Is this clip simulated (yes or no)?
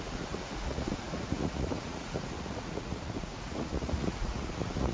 yes